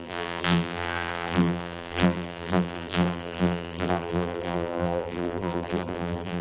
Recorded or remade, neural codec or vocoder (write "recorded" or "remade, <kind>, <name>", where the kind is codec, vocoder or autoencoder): remade, vocoder, BigVGAN v2